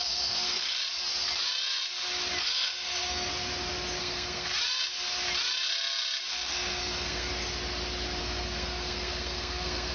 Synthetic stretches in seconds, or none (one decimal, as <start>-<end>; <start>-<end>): 0.0-0.8; 2.4-3.3; 4.0-4.5; 6.3-7.3; 8.2-9.9